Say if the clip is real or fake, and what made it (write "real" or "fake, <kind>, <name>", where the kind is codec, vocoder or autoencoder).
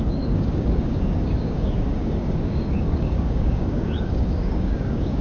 fake, codec, DAC